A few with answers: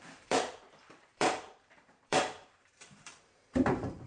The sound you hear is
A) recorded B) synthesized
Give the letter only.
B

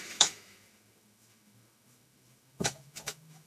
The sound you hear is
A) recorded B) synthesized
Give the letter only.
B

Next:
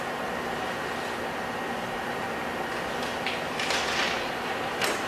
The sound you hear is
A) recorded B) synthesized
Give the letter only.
A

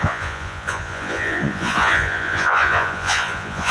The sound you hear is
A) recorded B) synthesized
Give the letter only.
B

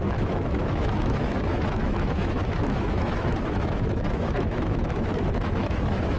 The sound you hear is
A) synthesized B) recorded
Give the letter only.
A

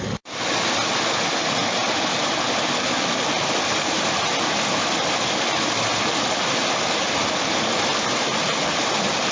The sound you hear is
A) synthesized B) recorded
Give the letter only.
B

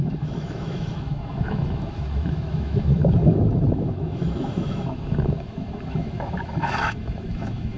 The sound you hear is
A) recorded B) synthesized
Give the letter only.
B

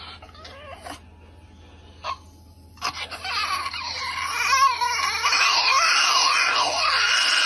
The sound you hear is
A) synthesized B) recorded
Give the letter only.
B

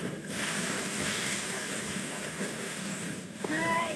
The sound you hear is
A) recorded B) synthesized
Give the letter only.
B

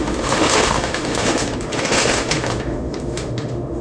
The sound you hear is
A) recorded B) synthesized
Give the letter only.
B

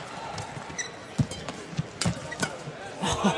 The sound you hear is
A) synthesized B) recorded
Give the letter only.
B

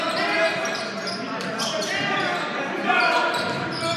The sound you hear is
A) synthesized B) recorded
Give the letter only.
B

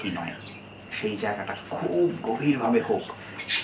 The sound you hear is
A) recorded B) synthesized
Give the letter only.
A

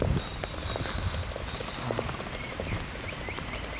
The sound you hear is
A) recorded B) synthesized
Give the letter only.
A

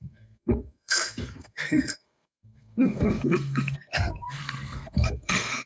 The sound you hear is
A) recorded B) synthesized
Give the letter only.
B